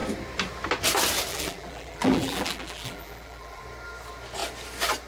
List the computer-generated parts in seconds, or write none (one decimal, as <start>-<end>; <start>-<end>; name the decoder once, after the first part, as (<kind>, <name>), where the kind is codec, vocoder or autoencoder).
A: 1.3-3.6 (vocoder, BigVGAN v2)